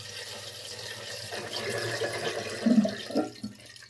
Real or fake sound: real